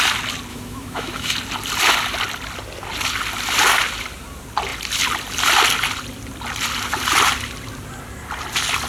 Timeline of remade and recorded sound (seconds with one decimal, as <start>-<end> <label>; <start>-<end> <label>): 0.0-0.5 recorded; 0.5-1.3 remade; 1.3-8.9 recorded